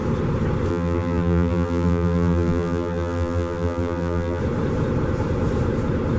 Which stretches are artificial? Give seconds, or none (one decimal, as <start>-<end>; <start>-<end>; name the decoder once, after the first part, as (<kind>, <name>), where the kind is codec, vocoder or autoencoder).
0.7-4.4 (vocoder, BigVGAN v2)